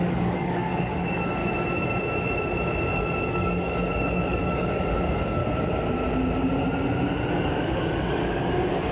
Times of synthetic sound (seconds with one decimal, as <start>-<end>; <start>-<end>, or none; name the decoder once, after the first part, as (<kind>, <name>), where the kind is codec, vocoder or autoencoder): 0.0-1.4 (codec, DAC); 3.3-5.4; 7.3-8.9